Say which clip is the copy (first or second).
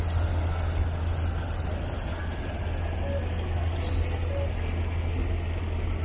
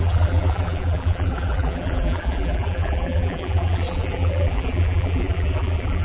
second